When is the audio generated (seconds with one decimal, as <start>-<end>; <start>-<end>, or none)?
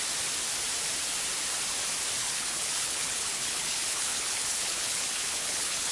2.2-5.9